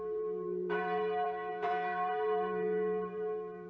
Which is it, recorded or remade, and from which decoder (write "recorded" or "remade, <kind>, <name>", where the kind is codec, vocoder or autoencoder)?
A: remade, vocoder, BigVGAN v2